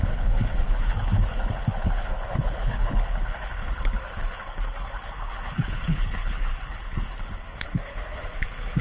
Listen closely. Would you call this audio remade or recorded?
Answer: remade